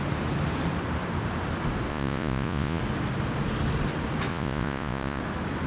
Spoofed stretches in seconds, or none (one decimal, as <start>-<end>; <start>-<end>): 1.9-2.8; 4.3-5.2

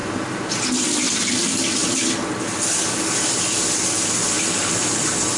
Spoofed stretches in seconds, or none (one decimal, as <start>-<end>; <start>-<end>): 0.5-1.8; 5.0-5.4